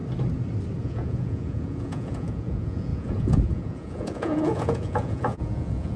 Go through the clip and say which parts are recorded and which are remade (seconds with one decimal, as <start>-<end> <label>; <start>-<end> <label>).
0.0-0.8 recorded; 0.8-6.0 remade